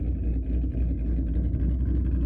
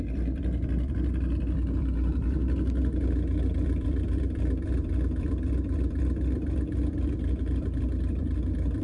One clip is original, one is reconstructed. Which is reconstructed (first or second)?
second